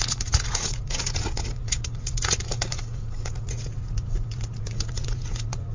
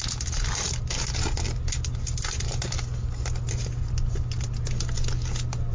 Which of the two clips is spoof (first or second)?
first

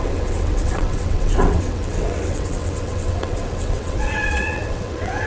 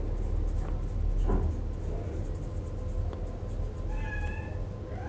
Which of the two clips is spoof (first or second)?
first